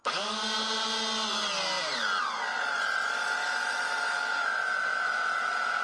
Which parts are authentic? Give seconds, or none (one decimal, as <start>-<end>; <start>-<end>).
0.0-3.4